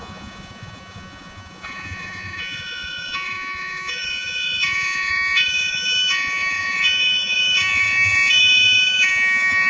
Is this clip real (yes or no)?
no